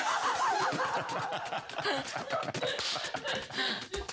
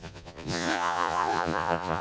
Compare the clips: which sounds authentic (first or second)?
first